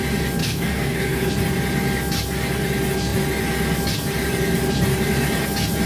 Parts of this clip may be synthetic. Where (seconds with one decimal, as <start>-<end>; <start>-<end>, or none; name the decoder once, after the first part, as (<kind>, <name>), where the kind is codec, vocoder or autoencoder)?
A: 0.4-1.3 (codec, SNAC)